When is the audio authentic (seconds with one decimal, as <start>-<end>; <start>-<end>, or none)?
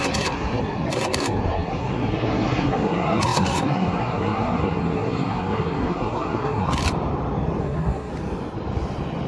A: 6.8-7.6; 8.1-9.3